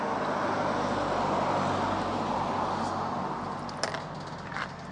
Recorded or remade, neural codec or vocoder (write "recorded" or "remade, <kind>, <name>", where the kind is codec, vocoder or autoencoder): recorded